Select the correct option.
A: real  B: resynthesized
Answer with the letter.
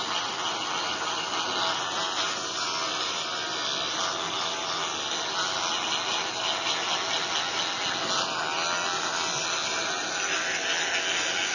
A